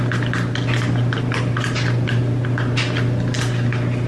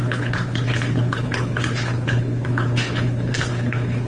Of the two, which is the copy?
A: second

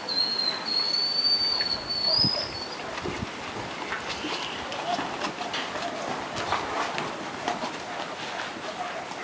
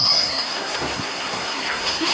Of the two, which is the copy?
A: second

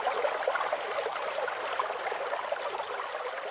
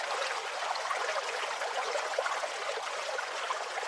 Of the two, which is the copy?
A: second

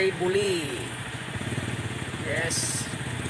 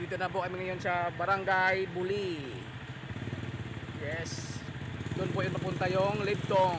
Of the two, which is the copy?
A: first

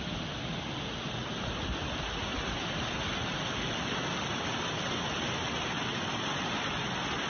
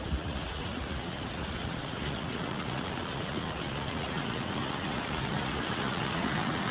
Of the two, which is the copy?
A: second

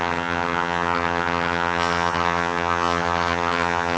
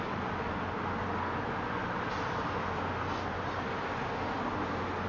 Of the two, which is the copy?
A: first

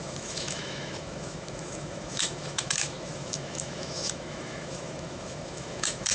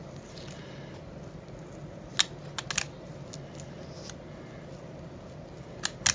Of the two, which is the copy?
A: first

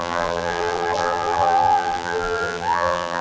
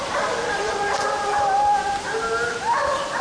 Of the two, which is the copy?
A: first